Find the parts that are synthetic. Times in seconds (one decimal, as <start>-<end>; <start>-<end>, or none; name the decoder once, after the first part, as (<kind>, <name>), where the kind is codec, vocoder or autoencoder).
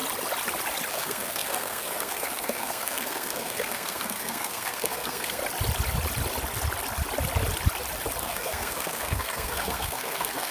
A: 0.9-5.4 (codec, SNAC); 8.2-10.5